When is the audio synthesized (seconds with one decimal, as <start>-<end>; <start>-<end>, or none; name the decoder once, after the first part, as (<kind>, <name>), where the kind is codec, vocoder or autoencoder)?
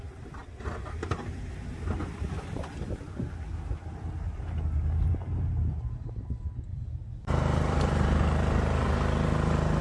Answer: 6.7-8.2 (vocoder, BigVGAN v2)